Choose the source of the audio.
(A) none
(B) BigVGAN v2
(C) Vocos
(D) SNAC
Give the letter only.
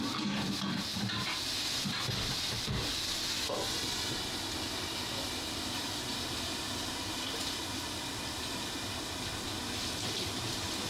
A